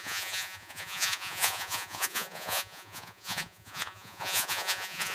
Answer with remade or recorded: remade